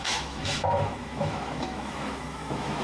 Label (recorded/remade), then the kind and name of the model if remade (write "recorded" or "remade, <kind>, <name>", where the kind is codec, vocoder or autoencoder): remade, autoencoder, DAC-VAE